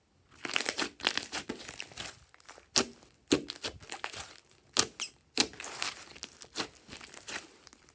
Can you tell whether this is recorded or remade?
recorded